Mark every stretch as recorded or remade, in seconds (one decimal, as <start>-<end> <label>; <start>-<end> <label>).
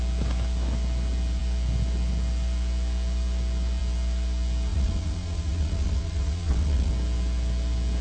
0.0-4.7 recorded; 4.7-6.9 remade; 6.9-8.0 recorded